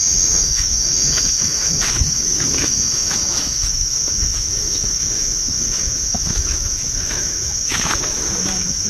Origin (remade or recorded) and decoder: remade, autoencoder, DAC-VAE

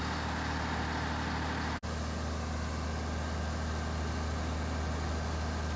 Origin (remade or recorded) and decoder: recorded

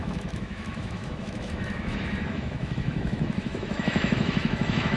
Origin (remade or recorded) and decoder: remade, autoencoder, DAC-VAE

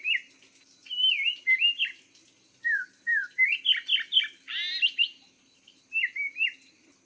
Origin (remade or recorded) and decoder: recorded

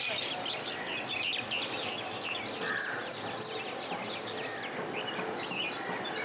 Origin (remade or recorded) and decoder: recorded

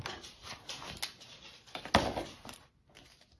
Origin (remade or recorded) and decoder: recorded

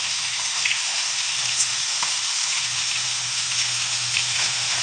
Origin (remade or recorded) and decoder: remade, autoencoder, DAC-VAE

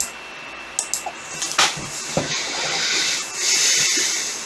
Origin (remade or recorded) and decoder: recorded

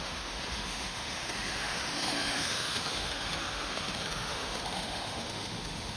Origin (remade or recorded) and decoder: remade, autoencoder, DAC-VAE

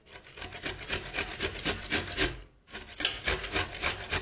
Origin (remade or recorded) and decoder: recorded